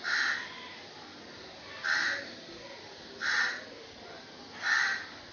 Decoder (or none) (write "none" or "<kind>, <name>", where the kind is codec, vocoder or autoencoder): none